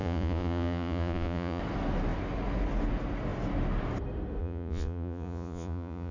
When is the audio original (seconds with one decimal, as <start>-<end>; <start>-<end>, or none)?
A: 1.6-4.4